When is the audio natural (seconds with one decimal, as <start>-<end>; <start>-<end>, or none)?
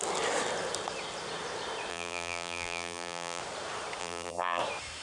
0.0-1.9; 3.4-4.0; 4.6-5.0